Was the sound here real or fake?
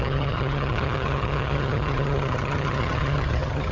fake